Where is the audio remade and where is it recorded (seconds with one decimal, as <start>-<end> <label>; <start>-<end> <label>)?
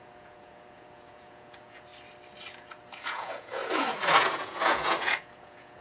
0.0-1.9 remade; 1.9-2.5 recorded; 2.5-5.8 remade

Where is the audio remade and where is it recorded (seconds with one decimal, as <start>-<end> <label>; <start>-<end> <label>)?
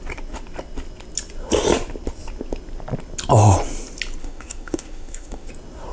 0.0-4.2 recorded; 4.2-5.5 remade; 5.5-5.9 recorded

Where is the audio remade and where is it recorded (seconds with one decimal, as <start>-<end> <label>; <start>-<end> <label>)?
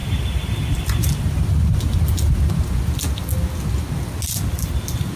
0.0-5.2 recorded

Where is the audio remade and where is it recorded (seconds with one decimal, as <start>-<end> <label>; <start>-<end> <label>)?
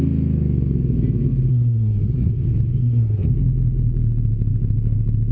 0.0-1.5 recorded; 1.5-2.3 remade; 2.3-2.7 recorded; 2.7-3.3 remade; 3.3-5.3 recorded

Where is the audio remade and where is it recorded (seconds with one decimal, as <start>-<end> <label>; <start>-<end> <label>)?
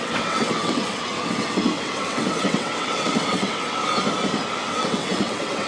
0.0-3.8 remade; 3.8-4.7 recorded; 4.7-5.7 remade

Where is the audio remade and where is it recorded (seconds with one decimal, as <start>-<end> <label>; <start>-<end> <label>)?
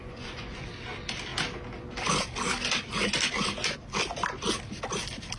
0.0-0.6 remade; 0.6-5.4 recorded